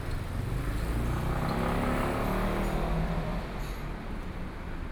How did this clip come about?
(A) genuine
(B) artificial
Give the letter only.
A